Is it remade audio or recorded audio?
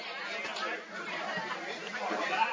recorded